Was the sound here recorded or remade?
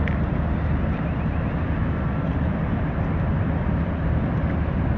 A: recorded